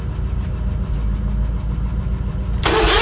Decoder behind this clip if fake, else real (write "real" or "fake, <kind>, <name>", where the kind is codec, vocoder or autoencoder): real